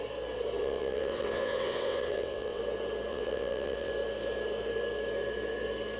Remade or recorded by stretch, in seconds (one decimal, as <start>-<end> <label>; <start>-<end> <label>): 0.0-0.6 recorded; 0.6-2.6 remade; 2.6-3.1 recorded; 3.1-3.9 remade; 3.9-6.0 recorded